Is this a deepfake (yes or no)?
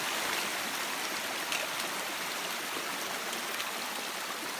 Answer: no